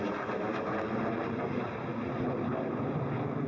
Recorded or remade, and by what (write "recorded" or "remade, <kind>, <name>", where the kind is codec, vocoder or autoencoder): recorded